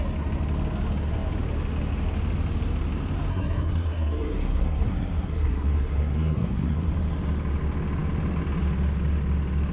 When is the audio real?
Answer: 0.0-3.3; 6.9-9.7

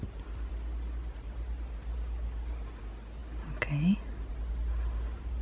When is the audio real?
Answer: 0.0-5.4

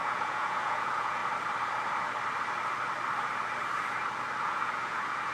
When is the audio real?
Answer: 1.2-4.4

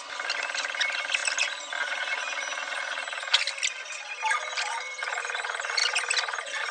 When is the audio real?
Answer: 0.0-5.8

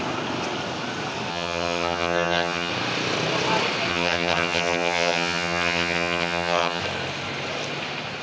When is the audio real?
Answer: 0.0-1.3; 2.7-3.9; 6.8-8.2

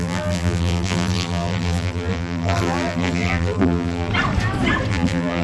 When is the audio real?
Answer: 4.1-4.9

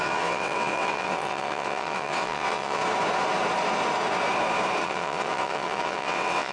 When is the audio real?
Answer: 2.8-4.8